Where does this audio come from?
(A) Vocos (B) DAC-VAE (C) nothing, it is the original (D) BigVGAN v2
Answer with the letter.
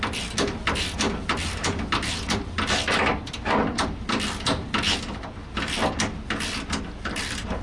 C